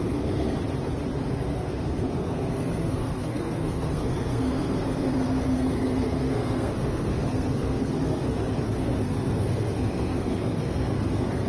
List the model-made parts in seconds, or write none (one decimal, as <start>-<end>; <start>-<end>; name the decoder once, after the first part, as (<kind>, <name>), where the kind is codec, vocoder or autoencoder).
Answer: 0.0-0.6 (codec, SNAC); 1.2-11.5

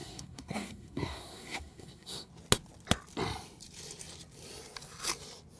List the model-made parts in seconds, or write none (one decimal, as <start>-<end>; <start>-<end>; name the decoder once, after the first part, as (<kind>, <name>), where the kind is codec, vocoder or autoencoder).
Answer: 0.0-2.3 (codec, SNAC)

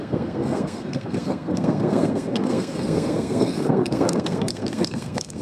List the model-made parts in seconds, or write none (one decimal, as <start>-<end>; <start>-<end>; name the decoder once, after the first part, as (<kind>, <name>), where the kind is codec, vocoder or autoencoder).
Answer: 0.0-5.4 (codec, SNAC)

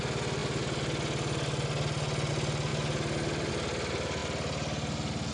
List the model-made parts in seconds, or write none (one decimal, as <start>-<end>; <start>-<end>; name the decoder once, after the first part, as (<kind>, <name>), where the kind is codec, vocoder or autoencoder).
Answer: none

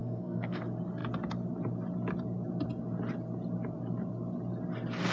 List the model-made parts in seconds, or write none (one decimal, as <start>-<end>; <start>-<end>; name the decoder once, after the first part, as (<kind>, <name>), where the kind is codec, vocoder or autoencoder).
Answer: 0.0-0.6 (codec, SNAC)